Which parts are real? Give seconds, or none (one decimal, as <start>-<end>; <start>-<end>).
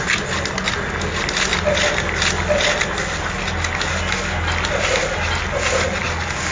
0.0-6.5